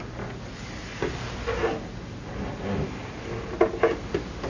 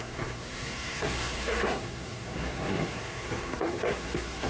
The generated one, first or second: second